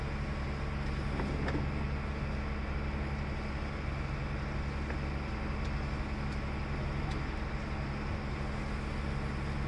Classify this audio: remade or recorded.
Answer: recorded